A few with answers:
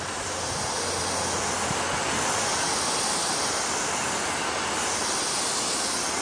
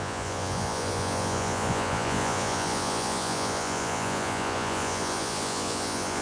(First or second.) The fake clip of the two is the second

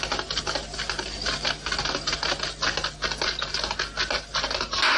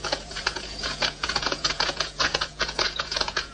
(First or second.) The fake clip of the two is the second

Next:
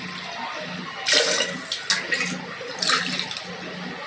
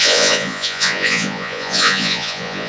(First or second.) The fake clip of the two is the second